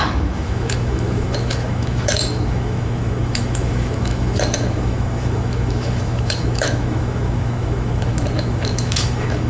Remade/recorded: remade